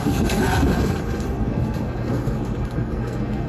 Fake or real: fake